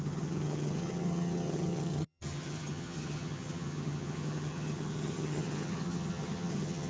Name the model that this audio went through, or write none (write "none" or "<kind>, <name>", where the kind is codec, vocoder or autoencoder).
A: vocoder, HiFi-GAN